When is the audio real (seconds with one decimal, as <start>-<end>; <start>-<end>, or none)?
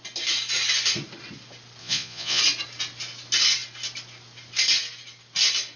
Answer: 0.0-1.8; 2.4-5.8